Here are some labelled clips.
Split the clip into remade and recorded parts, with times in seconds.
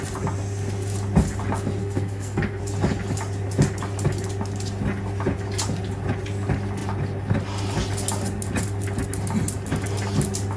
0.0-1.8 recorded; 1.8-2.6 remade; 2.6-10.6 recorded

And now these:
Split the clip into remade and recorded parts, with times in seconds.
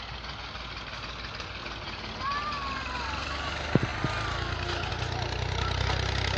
0.0-6.4 recorded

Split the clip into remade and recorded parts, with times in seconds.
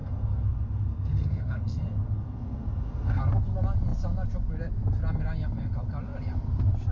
0.0-3.2 remade; 3.2-6.9 recorded